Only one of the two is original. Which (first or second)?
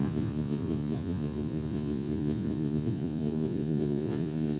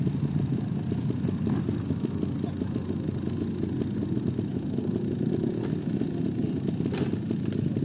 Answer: second